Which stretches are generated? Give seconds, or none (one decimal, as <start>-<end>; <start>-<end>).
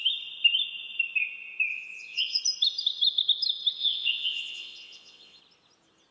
1.7-2.4; 3.8-5.4